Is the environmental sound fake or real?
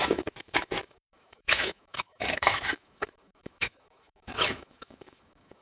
fake